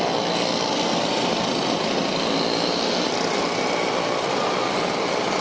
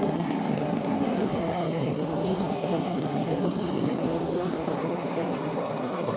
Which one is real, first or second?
first